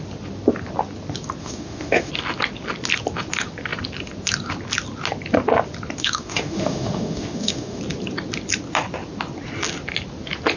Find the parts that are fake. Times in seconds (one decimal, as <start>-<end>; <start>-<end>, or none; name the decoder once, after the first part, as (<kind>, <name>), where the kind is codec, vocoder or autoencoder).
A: 1.4-2.1 (autoencoder, DAC-VAE); 6.0-7.8